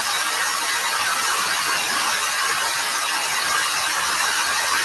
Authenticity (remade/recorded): recorded